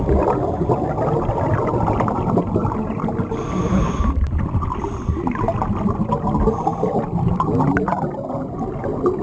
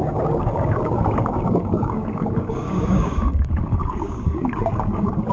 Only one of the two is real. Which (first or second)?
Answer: first